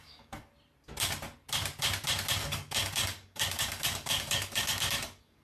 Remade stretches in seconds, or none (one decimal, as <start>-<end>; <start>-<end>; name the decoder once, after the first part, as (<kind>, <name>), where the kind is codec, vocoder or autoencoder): 0.0-0.5 (codec, DAC); 2.4-5.4